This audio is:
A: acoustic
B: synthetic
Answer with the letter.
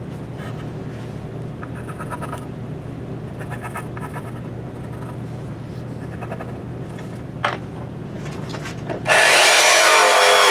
A